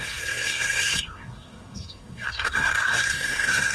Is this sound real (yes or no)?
no